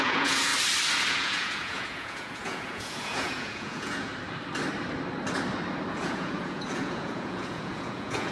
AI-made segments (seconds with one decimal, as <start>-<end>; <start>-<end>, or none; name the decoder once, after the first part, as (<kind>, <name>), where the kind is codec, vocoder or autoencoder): 0.0-0.5 (vocoder, Vocos); 1.1-4.1; 5.9-8.3